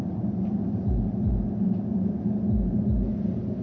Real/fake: real